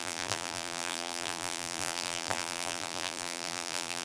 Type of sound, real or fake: fake